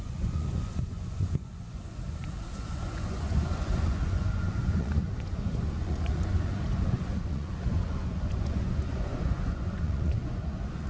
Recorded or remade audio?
remade